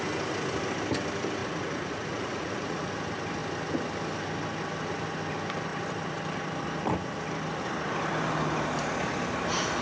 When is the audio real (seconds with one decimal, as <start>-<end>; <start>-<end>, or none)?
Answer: 0.0-1.4; 2.9-9.8